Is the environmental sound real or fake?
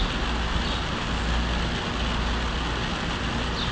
real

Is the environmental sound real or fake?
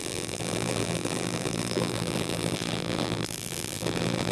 fake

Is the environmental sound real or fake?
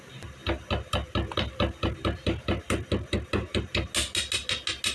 real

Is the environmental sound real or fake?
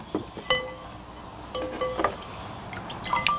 real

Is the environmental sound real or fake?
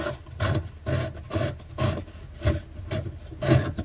real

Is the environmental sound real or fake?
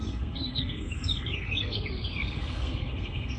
fake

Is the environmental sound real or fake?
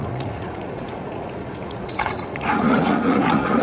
fake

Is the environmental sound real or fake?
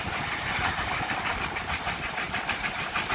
real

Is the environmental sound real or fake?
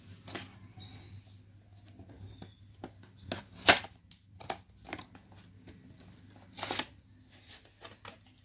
real